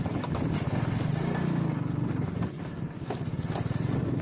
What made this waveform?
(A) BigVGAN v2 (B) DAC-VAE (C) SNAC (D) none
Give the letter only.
D